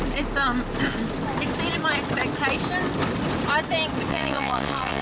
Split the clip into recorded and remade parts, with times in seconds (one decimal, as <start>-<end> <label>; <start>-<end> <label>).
0.0-4.1 recorded; 4.1-5.0 remade

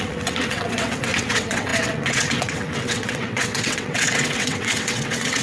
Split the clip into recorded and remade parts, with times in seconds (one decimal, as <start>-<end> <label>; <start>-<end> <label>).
0.0-5.4 remade